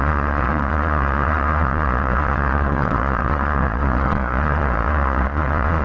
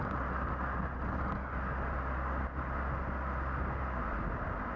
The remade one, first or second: first